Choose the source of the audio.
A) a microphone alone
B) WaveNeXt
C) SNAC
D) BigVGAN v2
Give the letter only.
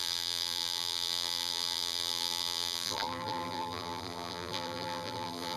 D